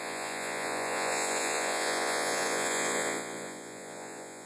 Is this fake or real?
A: fake